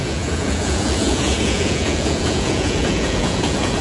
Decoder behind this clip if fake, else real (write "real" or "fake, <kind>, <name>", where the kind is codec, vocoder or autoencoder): fake, vocoder, Vocos